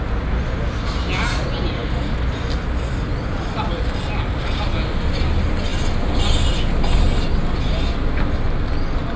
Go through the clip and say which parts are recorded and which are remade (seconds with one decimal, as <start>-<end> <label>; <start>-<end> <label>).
0.0-9.2 recorded